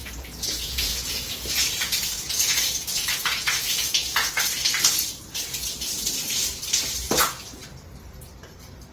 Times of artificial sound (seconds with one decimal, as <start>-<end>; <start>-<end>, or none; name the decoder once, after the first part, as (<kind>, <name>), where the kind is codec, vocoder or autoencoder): 0.0-4.3 (vocoder, Vocos)